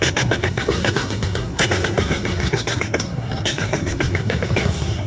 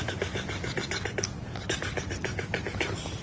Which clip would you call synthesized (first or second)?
first